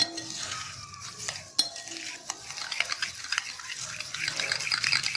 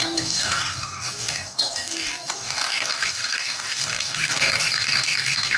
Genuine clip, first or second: first